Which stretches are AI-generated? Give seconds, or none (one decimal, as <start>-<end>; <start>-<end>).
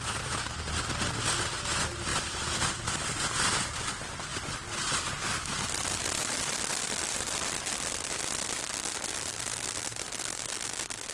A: 2.1-3.2